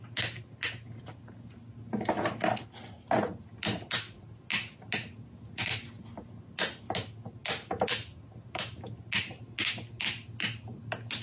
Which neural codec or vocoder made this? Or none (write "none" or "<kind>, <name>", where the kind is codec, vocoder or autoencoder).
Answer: none